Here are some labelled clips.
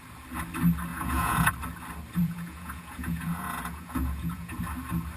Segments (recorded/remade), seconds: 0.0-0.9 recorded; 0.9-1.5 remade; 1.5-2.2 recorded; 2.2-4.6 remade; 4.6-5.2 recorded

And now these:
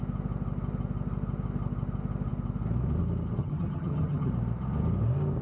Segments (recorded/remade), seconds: 0.0-3.4 recorded; 3.4-4.3 remade; 4.3-5.4 recorded

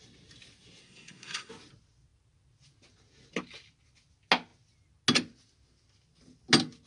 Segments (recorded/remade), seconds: 0.0-0.8 recorded; 0.8-1.5 remade; 1.5-6.9 recorded

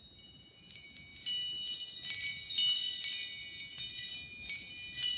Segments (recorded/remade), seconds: 0.0-5.2 recorded

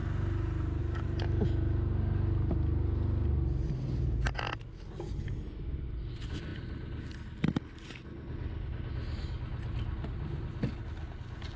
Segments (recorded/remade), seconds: 0.0-11.6 recorded

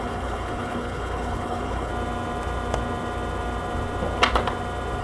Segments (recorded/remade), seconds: 0.0-1.9 remade; 1.9-5.0 recorded

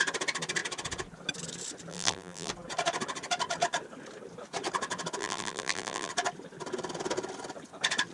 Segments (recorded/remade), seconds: 0.0-1.9 recorded; 1.9-2.5 remade; 2.5-5.2 recorded; 5.2-6.1 remade; 6.1-8.1 recorded

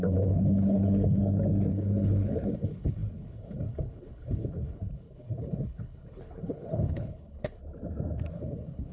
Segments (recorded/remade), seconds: 0.0-1.2 remade; 1.2-1.7 recorded; 1.7-7.6 remade; 7.6-8.3 recorded; 8.3-8.9 remade